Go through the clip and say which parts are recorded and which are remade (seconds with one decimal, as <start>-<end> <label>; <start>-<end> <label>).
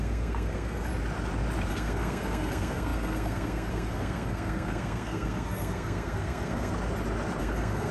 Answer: 0.0-0.9 remade; 0.9-1.7 recorded; 1.7-6.7 remade; 6.7-7.4 recorded; 7.4-7.9 remade